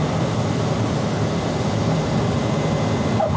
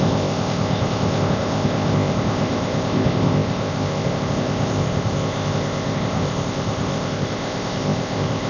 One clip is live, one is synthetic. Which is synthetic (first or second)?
second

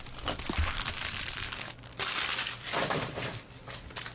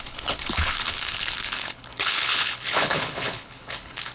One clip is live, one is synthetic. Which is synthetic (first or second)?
second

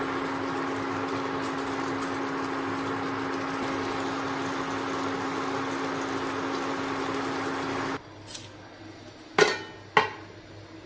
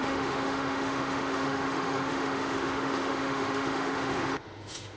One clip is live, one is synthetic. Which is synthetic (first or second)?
second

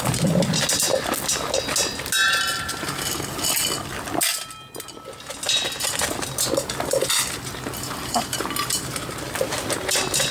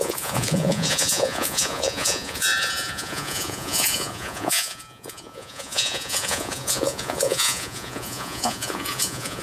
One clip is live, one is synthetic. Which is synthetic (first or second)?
second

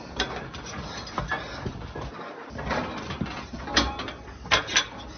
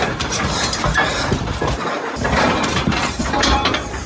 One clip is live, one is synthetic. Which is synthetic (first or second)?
second